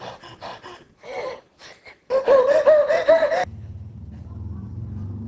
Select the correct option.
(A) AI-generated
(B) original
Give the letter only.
B